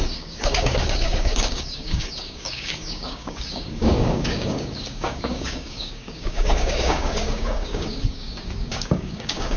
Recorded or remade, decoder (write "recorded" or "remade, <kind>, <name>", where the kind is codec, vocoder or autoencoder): remade, codec, DAC